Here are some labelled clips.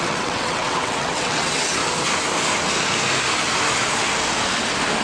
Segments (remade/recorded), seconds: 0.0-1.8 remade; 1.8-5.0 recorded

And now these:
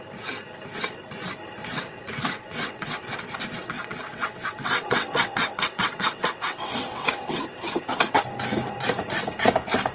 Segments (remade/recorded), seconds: 0.0-1.6 recorded; 1.6-3.0 remade; 3.0-3.6 recorded; 3.6-7.4 remade; 7.4-9.9 recorded

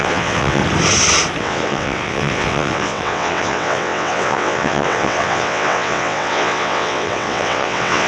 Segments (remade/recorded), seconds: 0.0-0.6 remade; 0.6-1.4 recorded; 1.4-8.1 remade